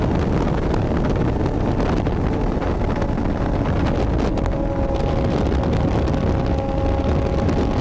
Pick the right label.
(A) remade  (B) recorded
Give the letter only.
B